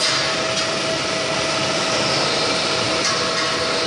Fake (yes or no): no